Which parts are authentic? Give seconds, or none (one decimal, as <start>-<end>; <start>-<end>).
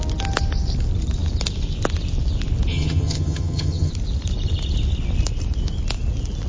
0.0-2.7; 3.9-6.5